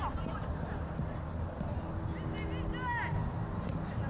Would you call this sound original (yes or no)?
yes